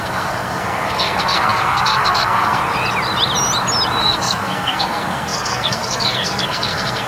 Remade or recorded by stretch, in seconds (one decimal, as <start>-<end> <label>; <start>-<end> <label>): 0.0-2.6 remade; 2.6-4.0 recorded; 4.0-7.1 remade